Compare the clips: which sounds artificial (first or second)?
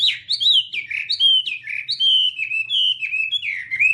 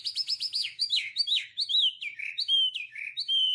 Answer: second